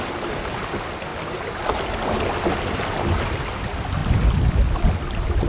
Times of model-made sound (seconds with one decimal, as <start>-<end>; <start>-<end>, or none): none